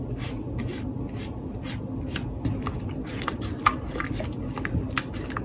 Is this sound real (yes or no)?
yes